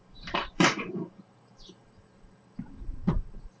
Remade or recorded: remade